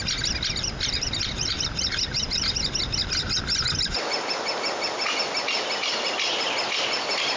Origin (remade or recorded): recorded